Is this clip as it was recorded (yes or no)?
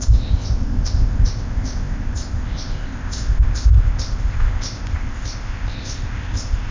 no